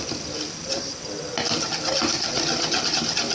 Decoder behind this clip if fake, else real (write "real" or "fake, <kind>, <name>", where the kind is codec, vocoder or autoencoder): real